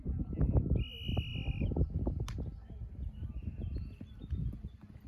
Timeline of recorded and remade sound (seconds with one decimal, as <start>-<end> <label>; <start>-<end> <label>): 0.0-5.1 recorded